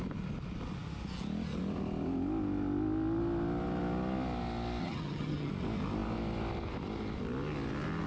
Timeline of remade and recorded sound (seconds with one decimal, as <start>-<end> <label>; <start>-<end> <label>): 0.0-4.8 recorded; 4.8-5.5 remade; 5.5-8.1 recorded